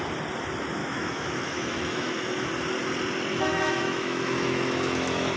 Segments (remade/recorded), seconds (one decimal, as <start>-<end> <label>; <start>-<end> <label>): 0.0-0.8 recorded; 0.8-2.5 remade; 2.5-3.3 recorded; 3.3-5.4 remade